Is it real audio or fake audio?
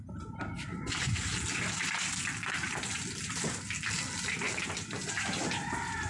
real